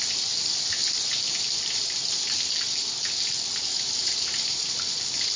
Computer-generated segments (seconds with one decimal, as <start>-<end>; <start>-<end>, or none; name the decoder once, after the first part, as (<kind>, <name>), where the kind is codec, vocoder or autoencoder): 3.7-4.8 (vocoder, BigVGAN v2)